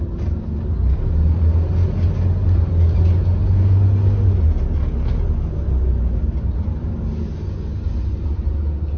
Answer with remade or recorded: recorded